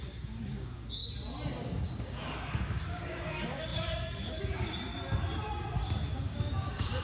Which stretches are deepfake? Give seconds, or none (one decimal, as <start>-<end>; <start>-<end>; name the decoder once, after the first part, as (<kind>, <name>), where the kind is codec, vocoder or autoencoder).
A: 0.0-1.0 (codec, DAC); 1.6-4.9; 5.5-7.0